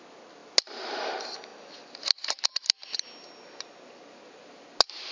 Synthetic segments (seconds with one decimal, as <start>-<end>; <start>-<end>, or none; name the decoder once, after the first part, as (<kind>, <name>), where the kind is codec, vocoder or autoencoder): none